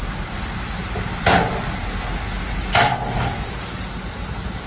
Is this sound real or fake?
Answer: real